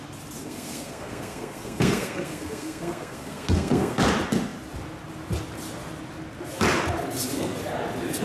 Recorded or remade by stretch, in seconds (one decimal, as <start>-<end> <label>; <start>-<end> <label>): 0.0-0.4 recorded; 0.4-4.0 remade; 4.0-8.2 recorded